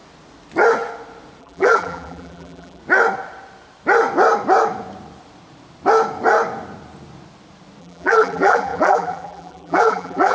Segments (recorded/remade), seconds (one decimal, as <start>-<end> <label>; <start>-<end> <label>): 0.0-1.4 recorded; 1.4-2.8 remade; 2.8-7.8 recorded; 7.8-10.3 remade

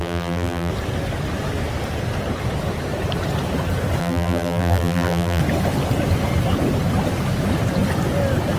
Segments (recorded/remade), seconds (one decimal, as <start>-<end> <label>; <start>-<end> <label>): 0.0-0.7 remade; 0.7-4.0 recorded; 4.0-5.4 remade; 5.4-8.6 recorded